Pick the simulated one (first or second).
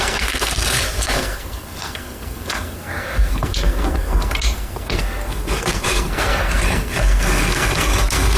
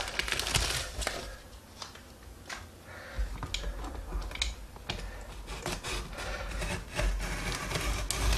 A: first